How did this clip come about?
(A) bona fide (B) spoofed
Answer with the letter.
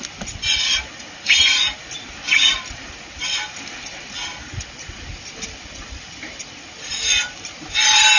A